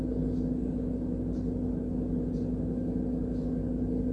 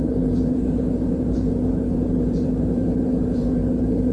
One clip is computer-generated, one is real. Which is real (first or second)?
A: first